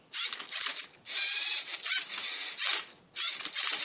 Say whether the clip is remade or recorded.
recorded